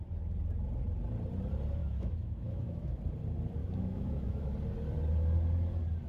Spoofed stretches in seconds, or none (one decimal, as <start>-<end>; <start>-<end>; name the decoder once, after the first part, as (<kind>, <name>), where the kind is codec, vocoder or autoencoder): 1.8-3.0 (autoencoder, DAC-VAE); 3.6-4.5